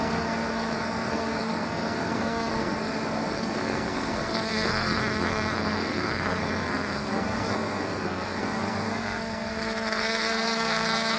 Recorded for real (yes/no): no